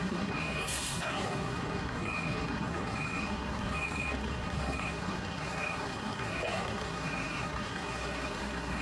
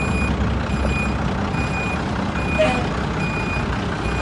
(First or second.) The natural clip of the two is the second